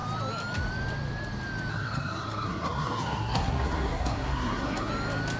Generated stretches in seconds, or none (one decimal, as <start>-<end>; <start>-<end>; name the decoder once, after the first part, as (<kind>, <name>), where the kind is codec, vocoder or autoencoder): 1.7-4.9 (codec, SNAC)

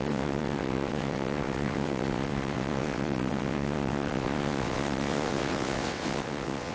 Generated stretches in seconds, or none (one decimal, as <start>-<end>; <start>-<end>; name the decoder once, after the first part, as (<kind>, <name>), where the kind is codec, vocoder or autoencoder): 0.0-6.7 (vocoder, WaveNeXt)

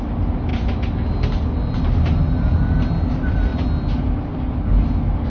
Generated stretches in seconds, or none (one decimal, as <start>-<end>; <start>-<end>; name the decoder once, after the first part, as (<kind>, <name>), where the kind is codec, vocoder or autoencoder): none

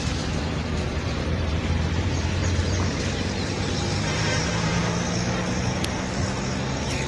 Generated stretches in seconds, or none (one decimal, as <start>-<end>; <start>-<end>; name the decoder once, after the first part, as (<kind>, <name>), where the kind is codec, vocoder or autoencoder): 0.9-4.8 (vocoder, BigVGAN v2)

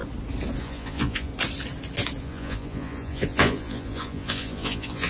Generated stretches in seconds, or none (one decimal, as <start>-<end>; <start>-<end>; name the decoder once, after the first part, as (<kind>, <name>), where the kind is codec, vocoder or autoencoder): 0.6-1.3 (vocoder, Vocos); 2.2-5.1